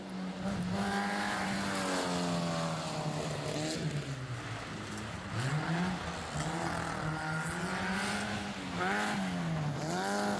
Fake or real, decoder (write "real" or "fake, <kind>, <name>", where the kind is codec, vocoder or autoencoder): real